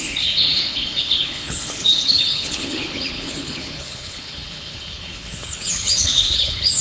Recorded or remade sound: remade